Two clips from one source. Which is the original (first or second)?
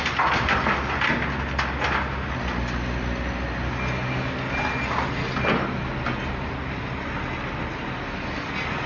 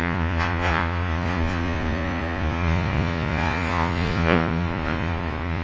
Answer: first